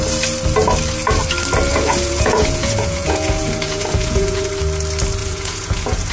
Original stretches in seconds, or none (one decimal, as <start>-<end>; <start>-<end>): 0.0-1.7; 4.5-5.2